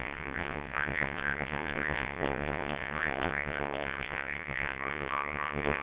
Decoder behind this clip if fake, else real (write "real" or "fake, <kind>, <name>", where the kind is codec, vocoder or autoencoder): fake, vocoder, WaveNeXt